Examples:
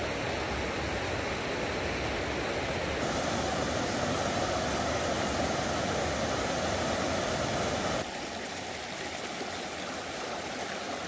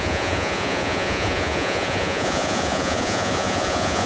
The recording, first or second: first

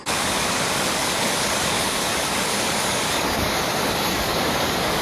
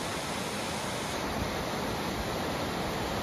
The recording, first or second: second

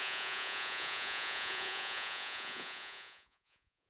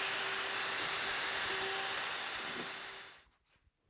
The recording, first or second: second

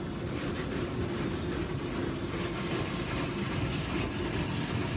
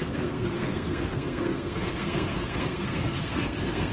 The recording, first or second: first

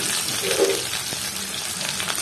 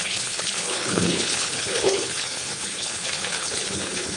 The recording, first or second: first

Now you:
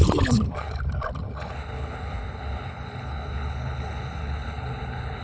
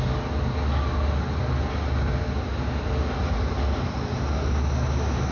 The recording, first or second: second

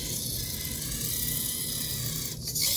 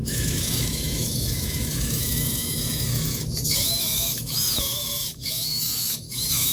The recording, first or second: first